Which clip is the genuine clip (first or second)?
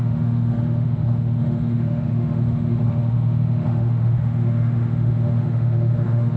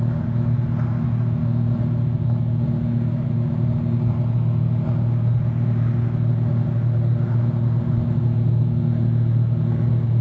second